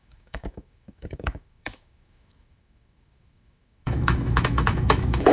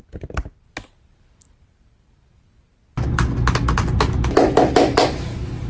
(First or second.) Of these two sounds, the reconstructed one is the first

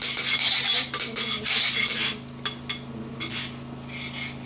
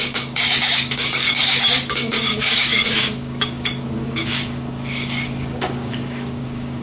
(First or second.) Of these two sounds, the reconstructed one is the second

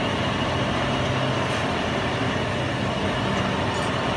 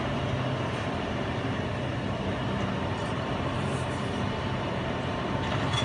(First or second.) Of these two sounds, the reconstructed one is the second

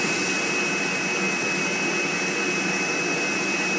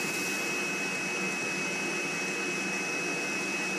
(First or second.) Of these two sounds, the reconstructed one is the first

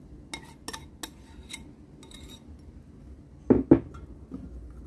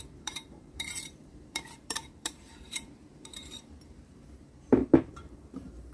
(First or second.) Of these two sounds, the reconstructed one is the second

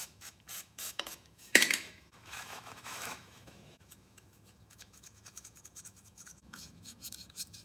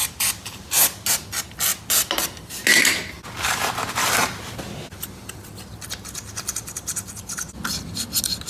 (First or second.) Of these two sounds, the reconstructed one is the first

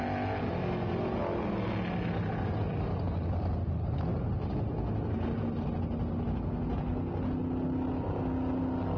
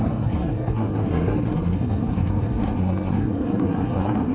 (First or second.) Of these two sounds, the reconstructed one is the second